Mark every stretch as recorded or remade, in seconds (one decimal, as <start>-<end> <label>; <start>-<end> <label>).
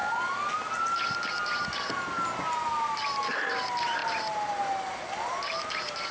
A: 0.0-6.1 recorded